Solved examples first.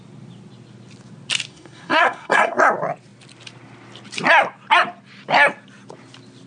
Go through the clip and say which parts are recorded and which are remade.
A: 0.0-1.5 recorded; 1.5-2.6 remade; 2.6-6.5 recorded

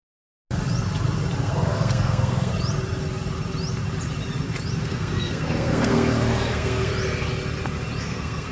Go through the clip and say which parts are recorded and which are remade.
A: 0.0-1.4 recorded; 1.4-2.5 remade; 2.5-4.8 recorded; 4.8-6.9 remade; 6.9-8.0 recorded; 8.0-8.5 remade

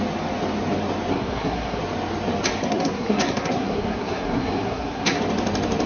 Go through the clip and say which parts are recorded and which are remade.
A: 0.0-1.1 recorded; 1.1-1.8 remade; 1.8-2.6 recorded; 2.6-5.2 remade; 5.2-5.9 recorded

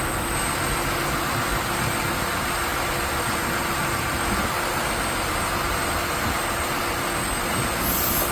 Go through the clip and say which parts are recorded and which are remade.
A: 0.0-8.3 recorded

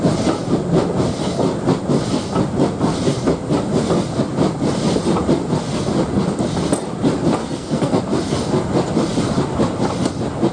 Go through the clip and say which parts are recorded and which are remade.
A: 0.0-7.4 recorded; 7.4-8.0 remade; 8.0-10.5 recorded

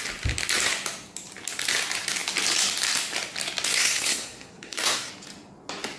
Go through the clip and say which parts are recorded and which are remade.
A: 0.0-3.7 recorded; 3.7-5.1 remade; 5.1-6.0 recorded

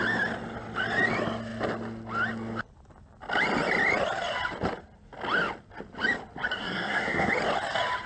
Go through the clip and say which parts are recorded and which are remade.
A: 0.0-6.6 recorded; 6.6-7.3 remade; 7.3-8.1 recorded

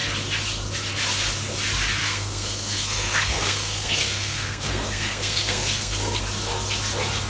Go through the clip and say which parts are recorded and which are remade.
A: 0.0-2.0 recorded; 2.0-6.2 remade; 6.2-7.3 recorded